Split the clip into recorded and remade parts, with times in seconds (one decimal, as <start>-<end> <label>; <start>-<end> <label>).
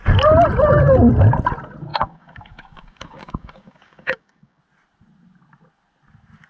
0.0-1.9 recorded; 1.9-4.6 remade; 4.6-6.5 recorded